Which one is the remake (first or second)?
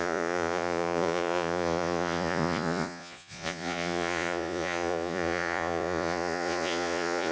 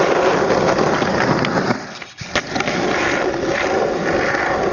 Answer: first